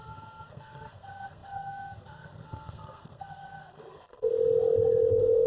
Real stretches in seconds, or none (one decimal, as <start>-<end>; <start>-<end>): 4.3-5.1